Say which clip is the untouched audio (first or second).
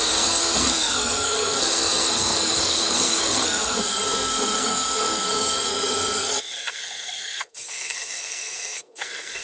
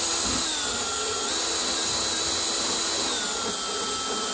second